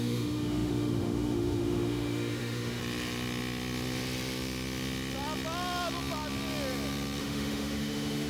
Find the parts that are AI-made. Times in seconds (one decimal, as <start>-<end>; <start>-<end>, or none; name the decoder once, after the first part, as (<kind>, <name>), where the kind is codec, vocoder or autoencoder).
0.0-2.8 (autoencoder, DAC-VAE); 7.2-8.3